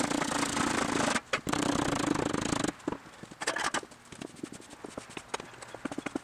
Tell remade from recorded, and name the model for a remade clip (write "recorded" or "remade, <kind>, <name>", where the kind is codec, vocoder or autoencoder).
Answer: recorded